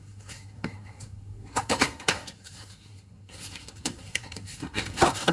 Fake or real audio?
fake